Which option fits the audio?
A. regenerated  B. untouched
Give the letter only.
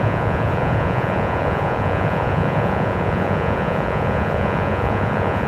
A